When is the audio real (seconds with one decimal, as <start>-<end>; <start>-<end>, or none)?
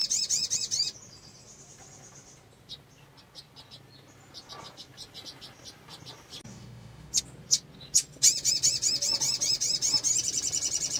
0.0-6.5; 7.1-11.0